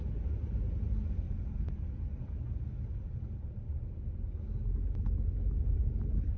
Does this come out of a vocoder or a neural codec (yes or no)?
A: no